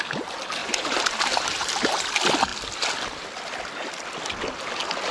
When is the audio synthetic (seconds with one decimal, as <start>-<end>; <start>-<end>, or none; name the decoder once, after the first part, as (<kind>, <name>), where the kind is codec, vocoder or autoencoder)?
0.6-1.9 (vocoder, BigVGAN v2)